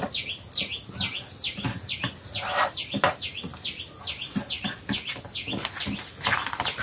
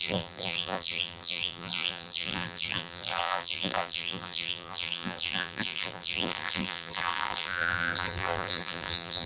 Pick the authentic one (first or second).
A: first